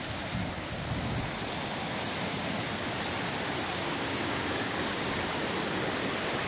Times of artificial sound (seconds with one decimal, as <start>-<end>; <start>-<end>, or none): 3.7-5.4